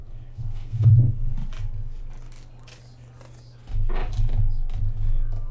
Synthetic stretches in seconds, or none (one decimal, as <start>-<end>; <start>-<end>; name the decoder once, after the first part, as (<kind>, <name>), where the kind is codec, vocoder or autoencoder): 0.0-0.9 (codec, SNAC)